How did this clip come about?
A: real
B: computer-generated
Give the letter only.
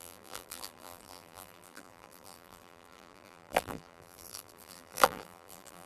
B